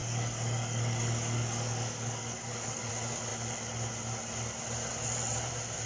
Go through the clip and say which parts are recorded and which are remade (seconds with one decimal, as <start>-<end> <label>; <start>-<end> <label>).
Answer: 0.0-2.9 remade; 2.9-5.9 recorded